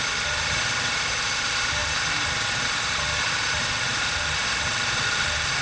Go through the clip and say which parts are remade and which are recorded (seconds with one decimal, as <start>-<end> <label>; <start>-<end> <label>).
0.0-1.8 recorded; 1.8-4.0 remade; 4.0-5.6 recorded